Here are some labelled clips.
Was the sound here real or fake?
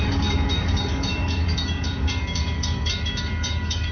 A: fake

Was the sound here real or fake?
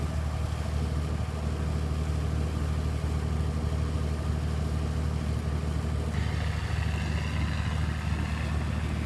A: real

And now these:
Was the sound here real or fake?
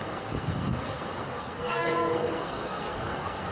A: fake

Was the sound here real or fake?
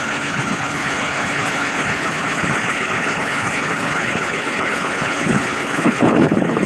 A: fake